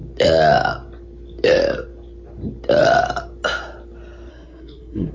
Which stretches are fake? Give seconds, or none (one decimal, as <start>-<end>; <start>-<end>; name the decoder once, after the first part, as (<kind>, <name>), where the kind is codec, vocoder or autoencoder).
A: 4.3-5.1 (codec, SNAC)